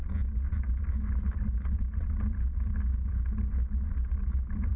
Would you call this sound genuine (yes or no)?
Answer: yes